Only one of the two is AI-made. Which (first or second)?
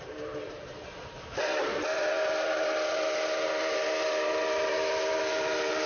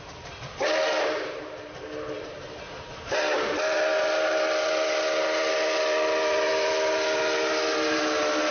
first